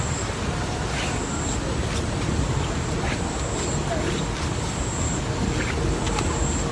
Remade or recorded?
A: recorded